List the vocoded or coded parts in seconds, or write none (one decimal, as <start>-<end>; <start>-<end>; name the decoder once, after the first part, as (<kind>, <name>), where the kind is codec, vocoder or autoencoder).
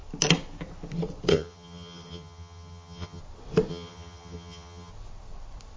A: 1.3-3.2 (vocoder, HiFi-GAN); 3.7-4.9